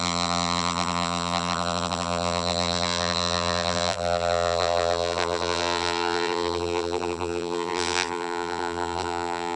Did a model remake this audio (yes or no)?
yes